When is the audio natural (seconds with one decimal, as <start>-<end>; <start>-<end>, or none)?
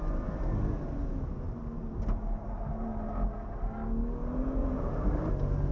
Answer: 0.0-4.6; 5.3-5.7